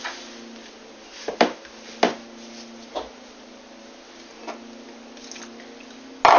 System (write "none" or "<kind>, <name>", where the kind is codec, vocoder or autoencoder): none